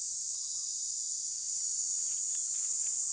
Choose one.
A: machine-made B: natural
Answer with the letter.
B